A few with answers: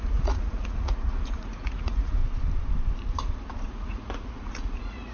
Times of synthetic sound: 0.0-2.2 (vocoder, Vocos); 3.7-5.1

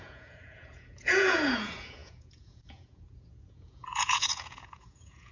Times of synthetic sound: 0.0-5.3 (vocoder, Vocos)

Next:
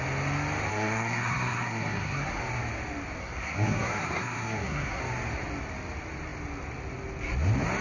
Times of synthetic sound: 0.7-2.4 (codec, SNAC); 3.2-5.0

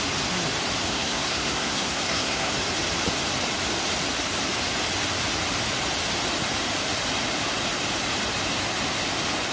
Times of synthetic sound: 0.9-2.5 (codec, SNAC)

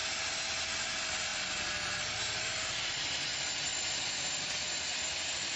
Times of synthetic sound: none

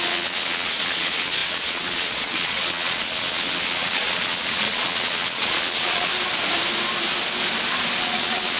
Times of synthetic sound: 0.0-6.1 (vocoder, Vocos); 8.0-8.6

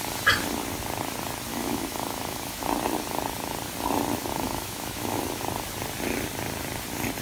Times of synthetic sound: 1.5-2.6 (autoencoder, DAC-VAE); 4.3-5.2

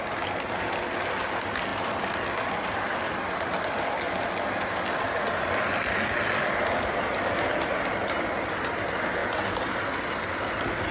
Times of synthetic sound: none